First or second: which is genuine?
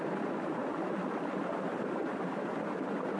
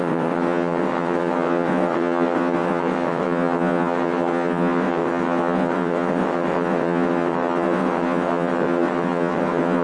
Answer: first